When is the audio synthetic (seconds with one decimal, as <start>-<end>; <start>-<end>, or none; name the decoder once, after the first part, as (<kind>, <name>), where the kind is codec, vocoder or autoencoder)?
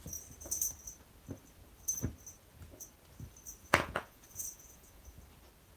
3.6-5.2 (vocoder, Vocos)